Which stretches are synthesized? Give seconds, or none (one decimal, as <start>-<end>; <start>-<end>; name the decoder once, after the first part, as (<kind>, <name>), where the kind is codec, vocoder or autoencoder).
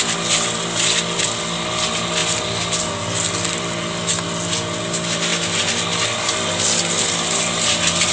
none